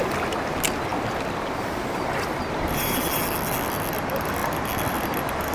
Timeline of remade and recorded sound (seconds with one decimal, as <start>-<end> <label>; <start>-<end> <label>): 0.0-5.5 recorded